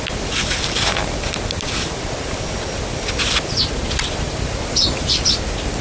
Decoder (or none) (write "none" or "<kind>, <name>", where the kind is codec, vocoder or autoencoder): none